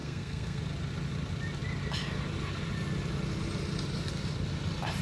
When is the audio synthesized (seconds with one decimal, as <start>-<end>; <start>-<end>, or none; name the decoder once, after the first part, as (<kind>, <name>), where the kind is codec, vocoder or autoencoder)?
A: 0.0-0.6 (codec, SNAC)